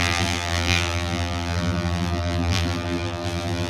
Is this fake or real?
fake